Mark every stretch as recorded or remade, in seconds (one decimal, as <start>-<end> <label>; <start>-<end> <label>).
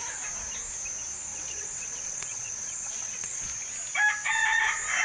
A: 0.0-1.3 recorded; 1.3-3.4 remade; 3.4-5.0 recorded